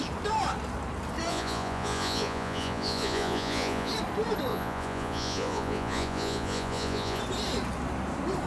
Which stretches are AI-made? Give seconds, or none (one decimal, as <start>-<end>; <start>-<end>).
1.3-3.9; 4.5-7.2